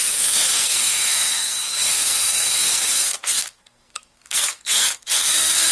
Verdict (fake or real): fake